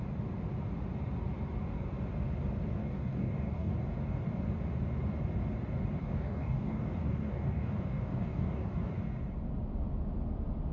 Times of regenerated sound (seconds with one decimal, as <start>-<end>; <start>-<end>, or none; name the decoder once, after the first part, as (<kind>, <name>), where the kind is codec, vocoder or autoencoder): 2.8-3.7 (codec, DAC); 6.0-8.9